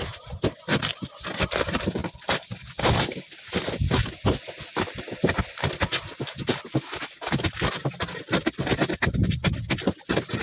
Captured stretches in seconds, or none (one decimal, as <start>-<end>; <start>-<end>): 0.0-10.4